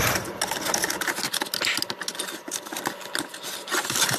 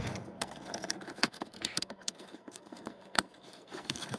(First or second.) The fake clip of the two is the second